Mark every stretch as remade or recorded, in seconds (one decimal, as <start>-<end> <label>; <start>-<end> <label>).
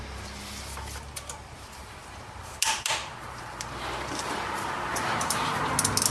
0.0-2.0 recorded; 2.0-5.6 remade; 5.6-6.1 recorded